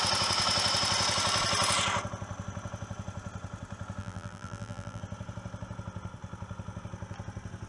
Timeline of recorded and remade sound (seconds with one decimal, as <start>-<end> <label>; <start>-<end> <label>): 0.0-4.0 recorded; 4.0-5.0 remade; 5.0-7.7 recorded